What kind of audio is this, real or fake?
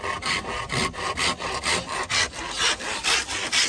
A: real